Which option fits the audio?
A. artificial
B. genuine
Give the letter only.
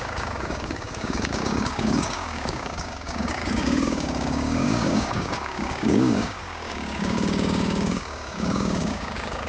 A